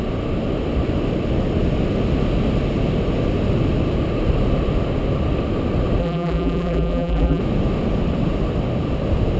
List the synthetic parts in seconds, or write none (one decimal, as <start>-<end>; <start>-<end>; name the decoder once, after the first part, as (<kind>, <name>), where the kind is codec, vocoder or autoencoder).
6.0-7.4 (vocoder, BigVGAN v2)